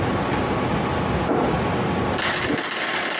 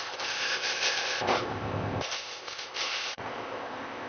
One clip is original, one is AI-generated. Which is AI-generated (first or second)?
second